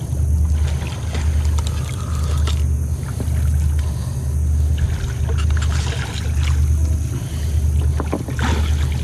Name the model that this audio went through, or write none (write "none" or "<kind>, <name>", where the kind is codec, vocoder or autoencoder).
none